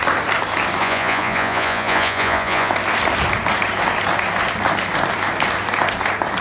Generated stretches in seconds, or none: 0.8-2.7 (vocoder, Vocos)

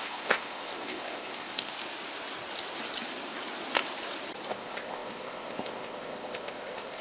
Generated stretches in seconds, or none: 0.0-1.7 (codec, ZipCodec); 4.5-7.0